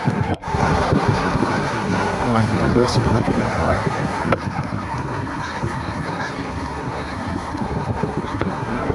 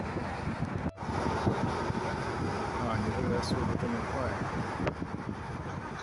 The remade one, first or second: first